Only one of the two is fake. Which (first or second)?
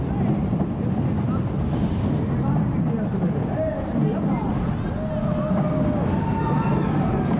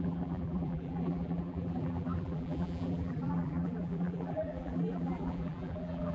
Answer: second